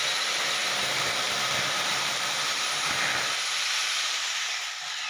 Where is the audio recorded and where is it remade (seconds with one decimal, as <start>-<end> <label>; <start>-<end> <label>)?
0.0-0.6 recorded; 0.6-3.0 remade; 3.0-3.8 recorded; 3.8-4.6 remade; 4.6-5.1 recorded